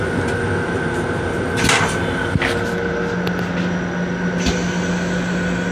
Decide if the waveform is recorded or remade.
recorded